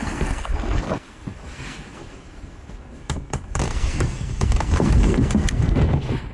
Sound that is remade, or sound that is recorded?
remade